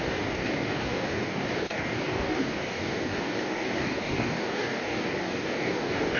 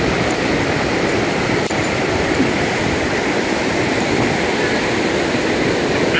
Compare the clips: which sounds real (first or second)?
second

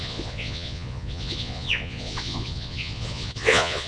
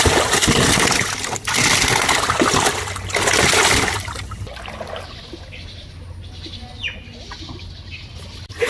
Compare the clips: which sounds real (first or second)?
second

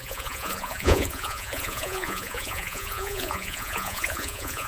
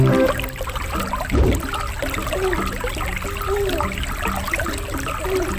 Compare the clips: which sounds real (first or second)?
second